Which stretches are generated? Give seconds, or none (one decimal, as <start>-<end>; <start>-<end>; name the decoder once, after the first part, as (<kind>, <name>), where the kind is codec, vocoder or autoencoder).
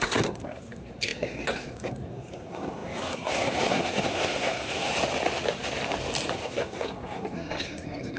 0.0-4.9 (codec, SNAC); 6.3-8.2